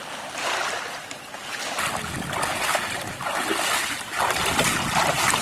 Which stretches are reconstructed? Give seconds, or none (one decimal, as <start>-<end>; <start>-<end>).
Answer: 3.5-5.4